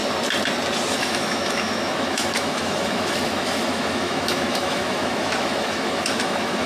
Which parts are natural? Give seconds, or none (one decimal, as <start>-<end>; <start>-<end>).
0.0-0.9